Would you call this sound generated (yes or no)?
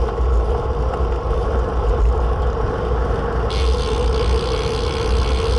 no